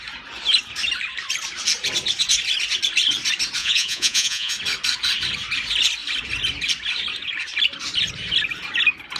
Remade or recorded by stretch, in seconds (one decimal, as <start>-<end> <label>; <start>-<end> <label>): 0.0-3.6 recorded; 3.6-4.5 remade; 4.5-9.2 recorded